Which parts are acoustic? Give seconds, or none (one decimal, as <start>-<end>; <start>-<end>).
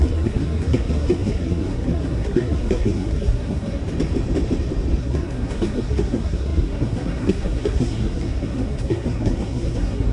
3.8-5.0